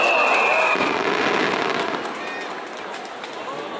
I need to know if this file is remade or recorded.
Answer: recorded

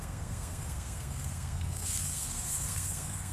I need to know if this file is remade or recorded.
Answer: remade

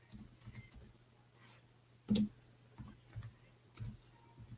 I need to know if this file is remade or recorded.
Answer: recorded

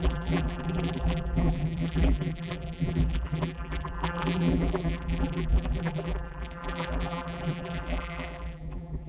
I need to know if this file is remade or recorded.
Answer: remade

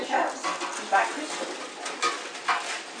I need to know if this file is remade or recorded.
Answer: recorded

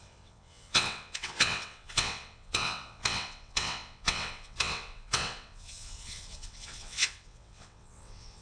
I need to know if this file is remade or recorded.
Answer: remade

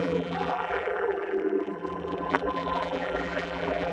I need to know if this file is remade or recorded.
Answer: remade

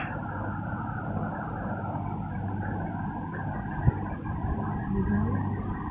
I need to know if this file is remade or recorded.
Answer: recorded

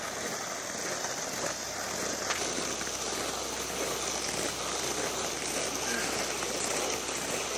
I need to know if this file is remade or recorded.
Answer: recorded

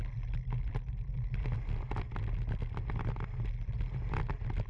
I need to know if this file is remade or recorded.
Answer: recorded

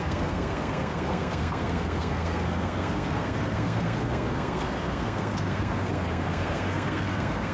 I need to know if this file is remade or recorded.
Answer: remade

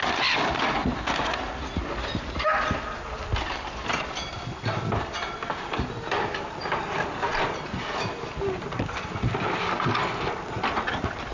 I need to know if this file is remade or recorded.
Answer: recorded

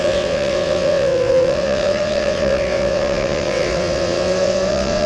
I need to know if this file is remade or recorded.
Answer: remade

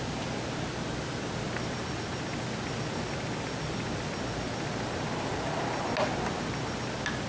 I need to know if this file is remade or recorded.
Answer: recorded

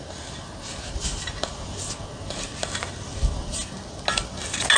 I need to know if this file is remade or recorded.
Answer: recorded